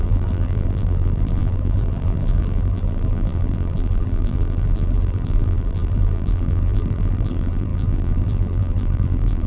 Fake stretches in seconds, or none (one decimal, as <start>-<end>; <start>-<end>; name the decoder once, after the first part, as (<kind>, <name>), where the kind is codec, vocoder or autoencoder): 0.0-9.5 (vocoder, BigVGAN v2)